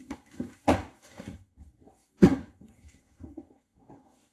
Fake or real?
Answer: fake